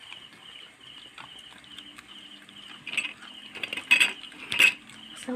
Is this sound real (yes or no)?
yes